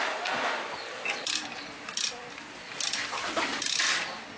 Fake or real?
real